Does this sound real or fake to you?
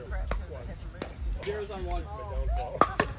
real